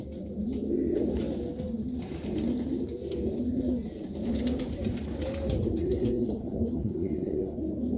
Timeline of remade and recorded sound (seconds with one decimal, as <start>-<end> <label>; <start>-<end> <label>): 0.0-5.8 recorded; 5.8-7.6 remade; 7.6-8.0 recorded